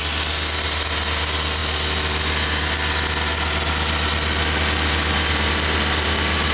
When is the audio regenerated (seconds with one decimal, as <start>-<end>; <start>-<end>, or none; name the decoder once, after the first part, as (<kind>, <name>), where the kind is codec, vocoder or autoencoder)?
none